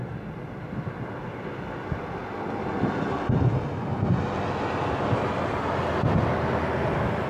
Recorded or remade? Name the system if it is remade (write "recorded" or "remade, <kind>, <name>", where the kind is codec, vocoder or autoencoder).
recorded